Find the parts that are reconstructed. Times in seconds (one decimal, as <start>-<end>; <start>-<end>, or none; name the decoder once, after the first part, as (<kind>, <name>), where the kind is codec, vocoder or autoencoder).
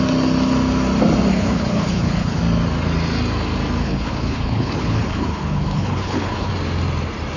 1.3-2.4 (codec, HILCodec); 3.8-6.5